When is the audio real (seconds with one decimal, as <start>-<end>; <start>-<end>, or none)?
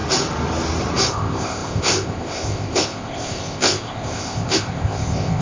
0.0-1.1